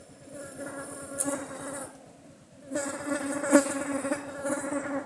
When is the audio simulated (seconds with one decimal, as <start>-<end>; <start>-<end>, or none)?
none